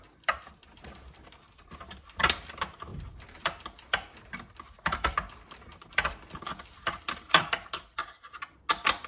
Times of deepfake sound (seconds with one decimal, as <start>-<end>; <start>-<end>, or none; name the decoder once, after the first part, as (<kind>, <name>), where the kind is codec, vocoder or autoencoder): none